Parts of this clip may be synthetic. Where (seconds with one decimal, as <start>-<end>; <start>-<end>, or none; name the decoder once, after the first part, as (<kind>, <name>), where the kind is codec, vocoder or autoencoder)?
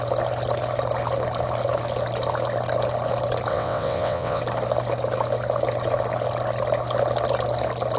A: 3.5-4.4 (vocoder, WaveNeXt)